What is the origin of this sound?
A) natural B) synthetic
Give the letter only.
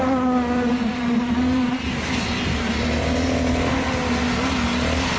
A